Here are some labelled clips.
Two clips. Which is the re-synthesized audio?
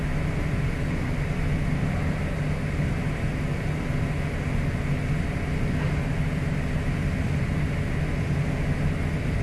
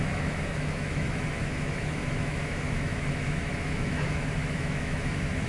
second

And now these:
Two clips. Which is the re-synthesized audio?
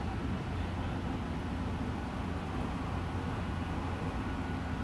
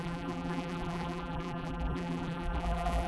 second